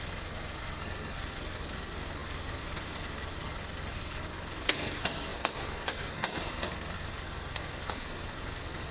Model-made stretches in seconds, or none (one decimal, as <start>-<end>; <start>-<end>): 0.0-8.9